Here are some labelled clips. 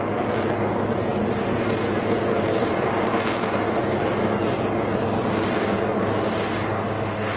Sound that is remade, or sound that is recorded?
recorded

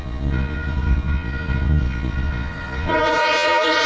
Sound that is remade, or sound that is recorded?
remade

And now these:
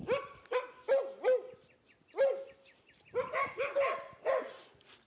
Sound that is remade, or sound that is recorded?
recorded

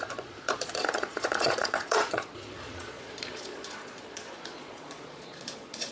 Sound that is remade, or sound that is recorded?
remade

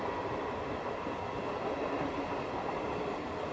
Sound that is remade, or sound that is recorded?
recorded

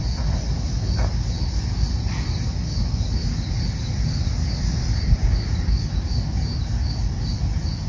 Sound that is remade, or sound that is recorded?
recorded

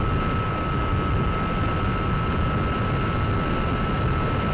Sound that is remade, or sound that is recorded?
recorded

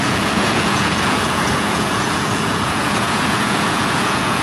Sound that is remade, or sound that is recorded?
remade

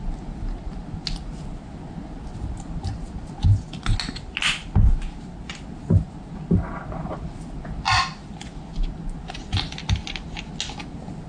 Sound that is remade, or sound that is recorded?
recorded